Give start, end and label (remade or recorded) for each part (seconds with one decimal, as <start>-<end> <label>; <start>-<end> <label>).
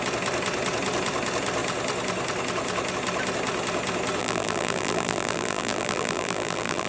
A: 0.0-4.2 recorded; 4.2-6.9 remade